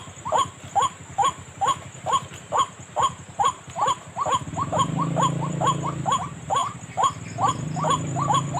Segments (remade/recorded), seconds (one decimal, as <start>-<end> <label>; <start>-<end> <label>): 0.0-3.4 recorded; 3.4-6.6 remade; 6.6-7.5 recorded; 7.5-8.6 remade